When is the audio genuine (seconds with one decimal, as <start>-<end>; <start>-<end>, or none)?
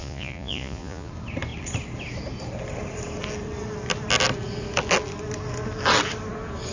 1.1-6.7